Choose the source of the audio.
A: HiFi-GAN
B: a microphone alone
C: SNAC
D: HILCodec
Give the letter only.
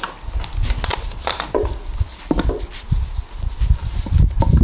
B